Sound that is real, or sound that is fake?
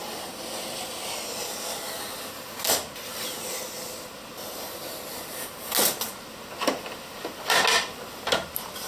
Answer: real